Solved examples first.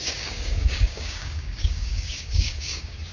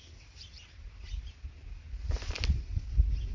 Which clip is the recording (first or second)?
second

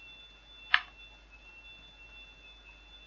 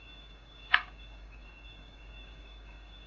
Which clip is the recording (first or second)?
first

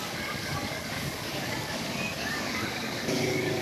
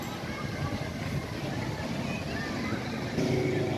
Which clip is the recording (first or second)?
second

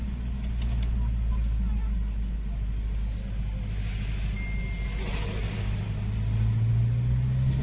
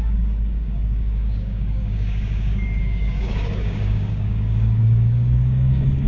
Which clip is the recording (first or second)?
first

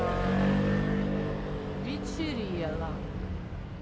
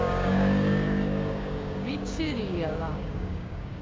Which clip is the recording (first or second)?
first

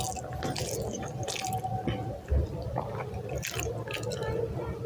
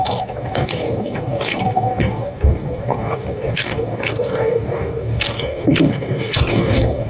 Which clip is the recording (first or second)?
first